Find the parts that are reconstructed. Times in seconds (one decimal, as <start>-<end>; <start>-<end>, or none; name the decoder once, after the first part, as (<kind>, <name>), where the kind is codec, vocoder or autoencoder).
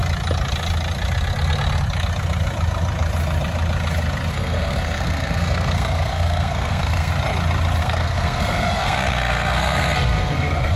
4.3-7.1 (codec, SNAC); 7.8-10.8